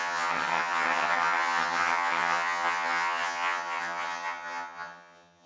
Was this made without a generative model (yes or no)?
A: no